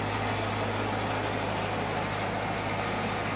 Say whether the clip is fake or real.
real